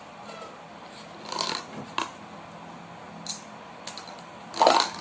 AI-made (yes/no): no